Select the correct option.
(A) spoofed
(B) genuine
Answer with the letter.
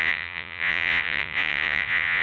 A